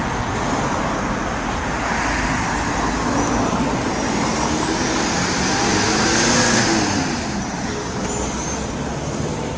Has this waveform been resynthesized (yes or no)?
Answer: no